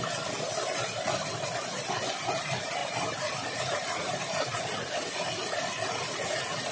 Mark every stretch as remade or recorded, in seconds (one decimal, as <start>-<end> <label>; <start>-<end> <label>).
0.0-2.8 recorded; 2.8-4.6 remade; 4.6-6.7 recorded